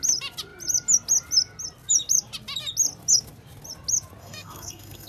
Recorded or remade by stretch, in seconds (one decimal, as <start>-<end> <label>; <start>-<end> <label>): 0.0-4.2 recorded; 4.2-5.1 remade